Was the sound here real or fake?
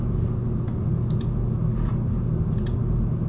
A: real